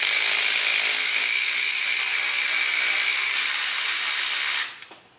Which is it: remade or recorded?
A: recorded